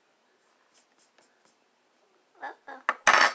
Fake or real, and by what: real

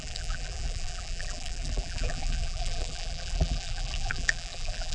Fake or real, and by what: fake, vocoder, BigVGAN v2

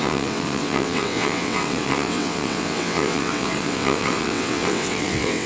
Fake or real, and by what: fake, vocoder, WaveNeXt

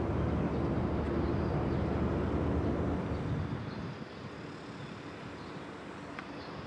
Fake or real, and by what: real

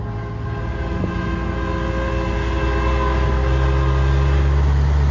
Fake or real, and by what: real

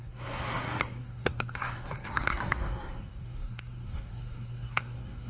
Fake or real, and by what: fake, codec, SNAC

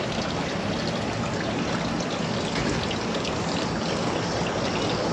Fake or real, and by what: real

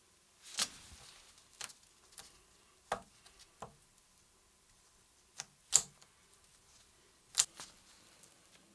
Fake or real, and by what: real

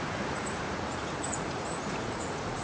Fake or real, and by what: fake, vocoder, Vocos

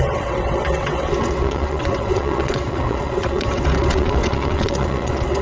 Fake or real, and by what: fake, vocoder, WaveNeXt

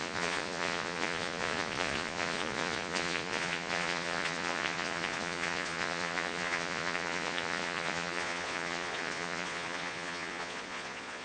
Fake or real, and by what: fake, vocoder, Vocos